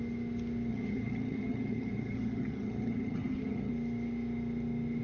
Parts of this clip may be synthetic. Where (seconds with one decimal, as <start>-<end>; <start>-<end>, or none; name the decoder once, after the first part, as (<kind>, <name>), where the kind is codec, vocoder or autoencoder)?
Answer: 0.7-3.7 (vocoder, HiFi-GAN)